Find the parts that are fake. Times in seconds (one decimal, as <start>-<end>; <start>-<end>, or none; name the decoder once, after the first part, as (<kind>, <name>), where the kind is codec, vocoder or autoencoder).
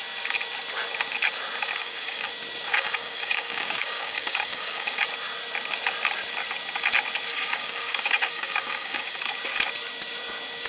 1.8-2.3 (codec, DAC); 2.7-5.0; 7.3-9.2